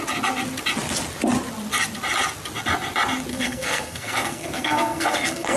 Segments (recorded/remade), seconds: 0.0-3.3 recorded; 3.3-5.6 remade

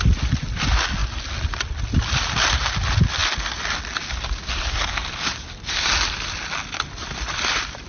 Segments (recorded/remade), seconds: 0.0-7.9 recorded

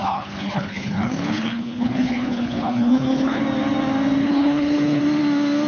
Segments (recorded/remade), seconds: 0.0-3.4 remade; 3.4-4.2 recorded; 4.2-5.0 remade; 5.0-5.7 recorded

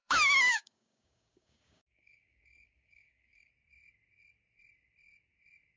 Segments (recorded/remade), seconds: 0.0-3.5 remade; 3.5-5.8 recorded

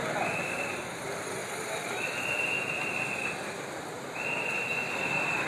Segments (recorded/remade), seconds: 0.0-5.5 recorded

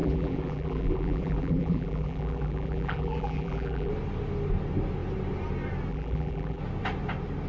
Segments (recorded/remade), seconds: 0.0-3.9 remade; 3.9-5.9 recorded; 5.9-6.6 remade; 6.6-7.5 recorded